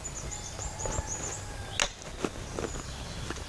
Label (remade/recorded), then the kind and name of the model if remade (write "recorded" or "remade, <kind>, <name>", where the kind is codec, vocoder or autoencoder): recorded